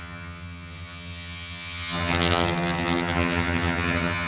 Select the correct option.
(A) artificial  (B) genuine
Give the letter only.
A